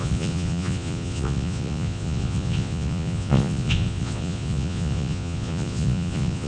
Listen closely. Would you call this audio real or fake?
fake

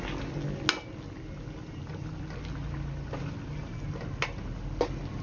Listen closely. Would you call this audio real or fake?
real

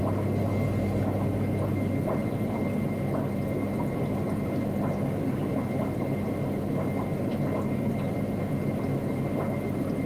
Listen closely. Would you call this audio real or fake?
real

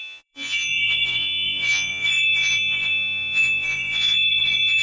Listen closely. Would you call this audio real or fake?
fake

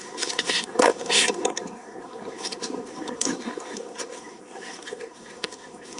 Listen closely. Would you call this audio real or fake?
fake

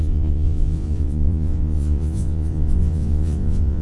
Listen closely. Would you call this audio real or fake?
fake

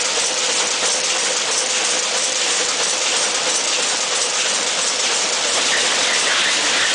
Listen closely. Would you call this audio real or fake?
real